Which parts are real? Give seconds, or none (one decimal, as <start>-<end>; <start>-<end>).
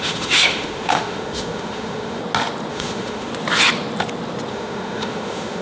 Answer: 2.2-2.7; 3.3-4.5